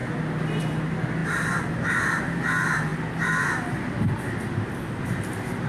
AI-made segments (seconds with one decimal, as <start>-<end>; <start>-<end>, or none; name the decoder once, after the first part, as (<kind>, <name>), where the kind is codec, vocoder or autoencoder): none